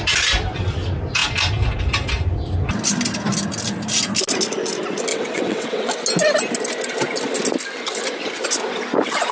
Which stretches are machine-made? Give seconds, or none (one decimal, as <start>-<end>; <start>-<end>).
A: 5.1-5.9